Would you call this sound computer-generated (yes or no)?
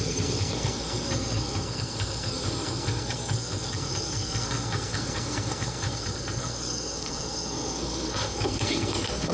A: yes